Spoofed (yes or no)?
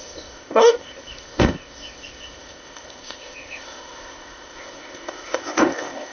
yes